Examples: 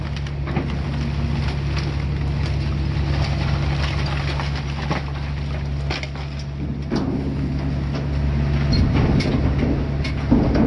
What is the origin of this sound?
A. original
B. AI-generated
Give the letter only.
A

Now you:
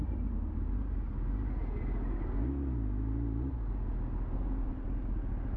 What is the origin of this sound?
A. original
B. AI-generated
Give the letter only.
A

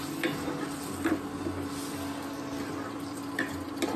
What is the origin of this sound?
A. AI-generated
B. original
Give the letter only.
B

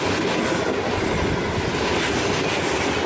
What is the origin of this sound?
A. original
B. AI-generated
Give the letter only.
A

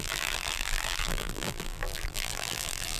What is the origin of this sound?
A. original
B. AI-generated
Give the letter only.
B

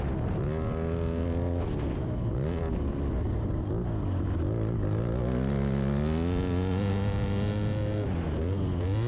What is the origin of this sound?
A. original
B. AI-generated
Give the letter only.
A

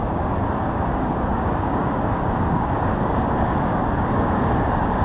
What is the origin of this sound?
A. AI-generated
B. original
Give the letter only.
A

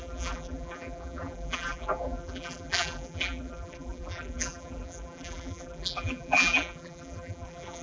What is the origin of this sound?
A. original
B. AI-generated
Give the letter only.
B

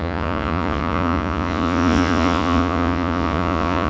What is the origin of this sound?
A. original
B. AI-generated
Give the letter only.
B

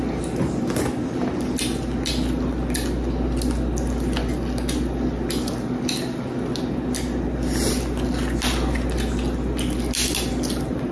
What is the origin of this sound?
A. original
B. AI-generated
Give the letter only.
A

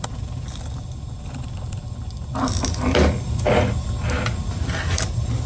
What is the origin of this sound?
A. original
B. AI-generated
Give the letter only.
A